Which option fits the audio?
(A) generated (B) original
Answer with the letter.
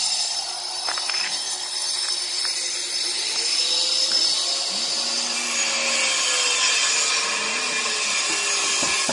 B